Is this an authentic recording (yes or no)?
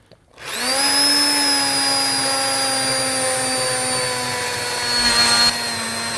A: yes